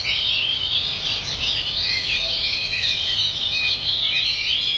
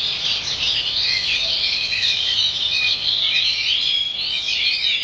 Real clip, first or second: first